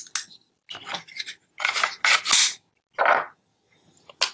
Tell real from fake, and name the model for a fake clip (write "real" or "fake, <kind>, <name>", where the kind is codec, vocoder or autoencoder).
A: real